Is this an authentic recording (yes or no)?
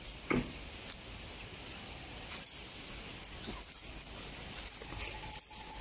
yes